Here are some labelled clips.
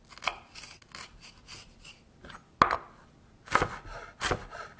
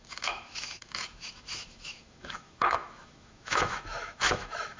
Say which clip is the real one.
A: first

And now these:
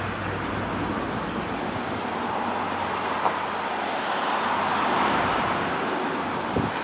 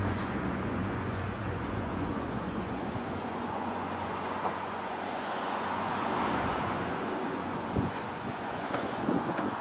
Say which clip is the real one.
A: first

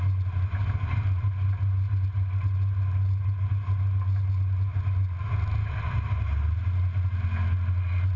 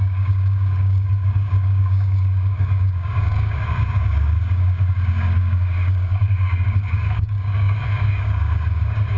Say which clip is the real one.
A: first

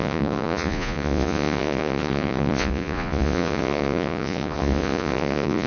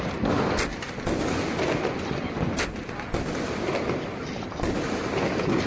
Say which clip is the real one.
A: second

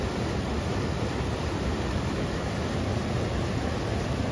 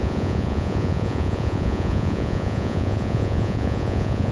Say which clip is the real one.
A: first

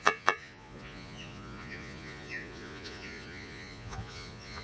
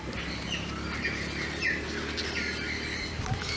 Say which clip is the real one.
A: second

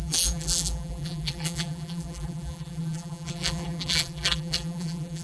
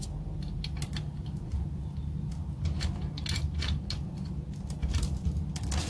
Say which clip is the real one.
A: second